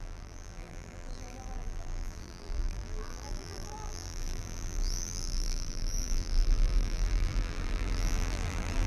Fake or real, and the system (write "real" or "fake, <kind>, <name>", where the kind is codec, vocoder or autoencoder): fake, vocoder, BigVGAN v2